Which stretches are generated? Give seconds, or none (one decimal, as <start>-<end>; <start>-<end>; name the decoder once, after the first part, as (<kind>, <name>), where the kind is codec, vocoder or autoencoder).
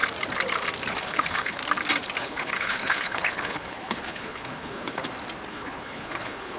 1.0-1.6 (codec, HILCodec); 2.2-5.0; 5.5-6.6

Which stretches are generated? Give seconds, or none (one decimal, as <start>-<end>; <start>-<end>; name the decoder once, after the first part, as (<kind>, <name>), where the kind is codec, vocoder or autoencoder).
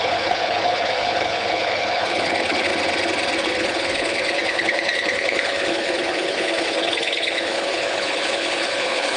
0.0-2.7 (codec, HILCodec); 3.4-9.2